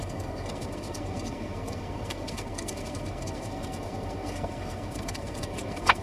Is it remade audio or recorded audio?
remade